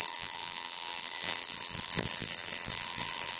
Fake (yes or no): yes